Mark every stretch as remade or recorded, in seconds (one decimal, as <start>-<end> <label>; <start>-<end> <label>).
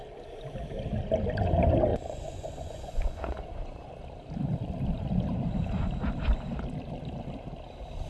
0.0-1.9 recorded; 1.9-4.0 remade; 4.0-8.1 recorded